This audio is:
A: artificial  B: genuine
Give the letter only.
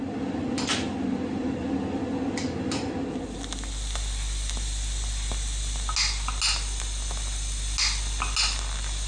B